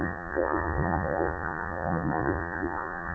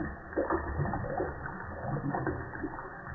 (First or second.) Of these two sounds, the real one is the second